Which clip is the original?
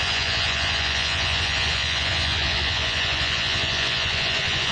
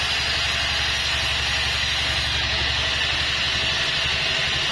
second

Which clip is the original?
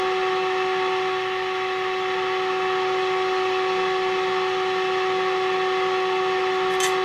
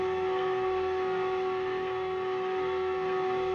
first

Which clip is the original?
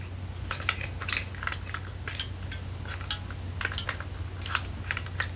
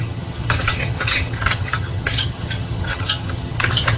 first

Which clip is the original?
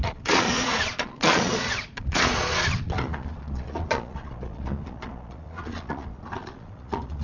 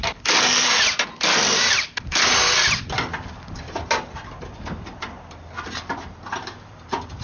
second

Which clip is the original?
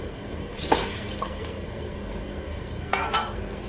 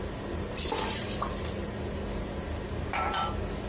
second